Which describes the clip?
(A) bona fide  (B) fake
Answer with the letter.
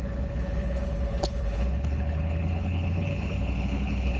B